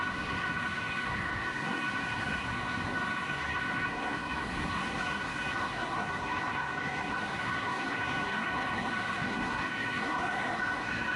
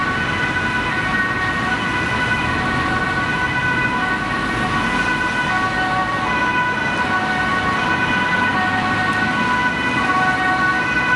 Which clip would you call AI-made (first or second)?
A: first